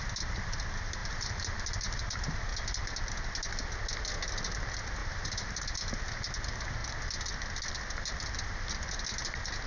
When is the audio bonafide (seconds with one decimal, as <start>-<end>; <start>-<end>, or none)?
0.0-1.0; 2.0-5.0; 5.6-9.7